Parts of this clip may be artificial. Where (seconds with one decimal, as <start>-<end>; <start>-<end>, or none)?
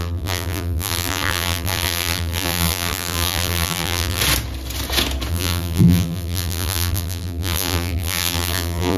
0.0-4.2; 5.3-9.0